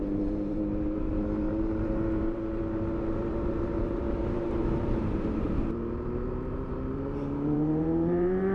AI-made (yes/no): yes